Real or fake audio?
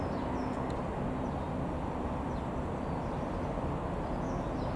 real